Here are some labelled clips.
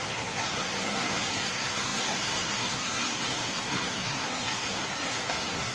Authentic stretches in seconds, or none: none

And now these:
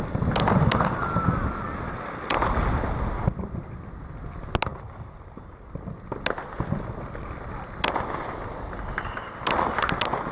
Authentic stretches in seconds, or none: 0.0-10.3

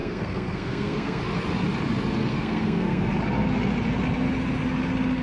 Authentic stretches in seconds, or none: 1.2-2.3; 3.0-5.2

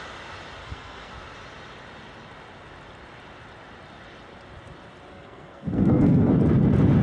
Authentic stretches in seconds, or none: 0.0-0.6; 1.1-5.1; 6.3-7.0

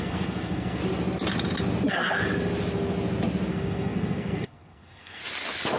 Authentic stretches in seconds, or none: 0.8-1.9; 2.3-3.5; 5.2-5.8

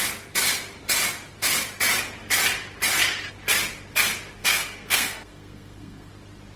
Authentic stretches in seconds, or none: 0.0-4.4; 6.1-6.6

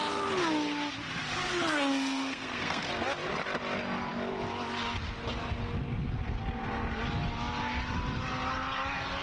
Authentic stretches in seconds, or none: 0.0-1.7; 2.9-9.2

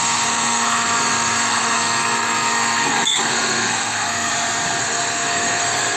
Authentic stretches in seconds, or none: 4.3-4.8